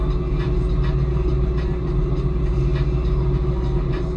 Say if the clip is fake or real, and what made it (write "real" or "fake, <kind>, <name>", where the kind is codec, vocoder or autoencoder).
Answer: real